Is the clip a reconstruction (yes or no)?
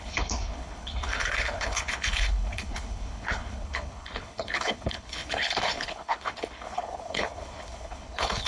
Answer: yes